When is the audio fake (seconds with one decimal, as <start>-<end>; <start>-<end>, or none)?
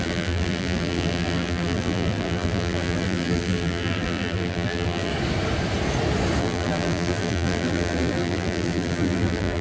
0.0-5.1; 6.4-9.6